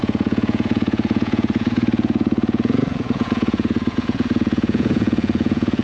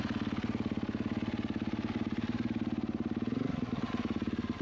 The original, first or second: second